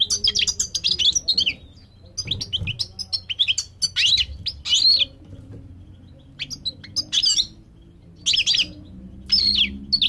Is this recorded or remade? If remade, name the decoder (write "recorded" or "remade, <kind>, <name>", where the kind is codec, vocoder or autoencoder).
recorded